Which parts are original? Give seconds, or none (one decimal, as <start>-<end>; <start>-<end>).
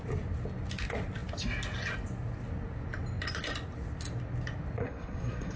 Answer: 0.0-4.8